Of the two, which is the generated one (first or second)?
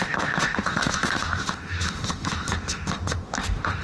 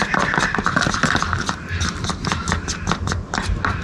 first